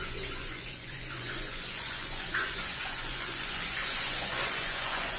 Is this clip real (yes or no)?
no